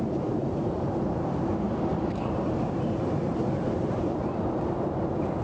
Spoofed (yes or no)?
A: yes